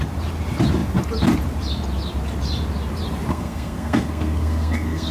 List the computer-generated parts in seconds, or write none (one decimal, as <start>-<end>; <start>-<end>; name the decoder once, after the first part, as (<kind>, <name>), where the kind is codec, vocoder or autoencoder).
3.3-5.1 (codec, SNAC)